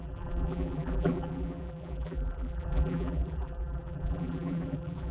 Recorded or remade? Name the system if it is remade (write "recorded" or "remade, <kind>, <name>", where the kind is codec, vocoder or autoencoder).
remade, vocoder, BigVGAN v2